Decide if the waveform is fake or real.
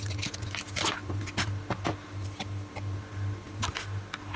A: real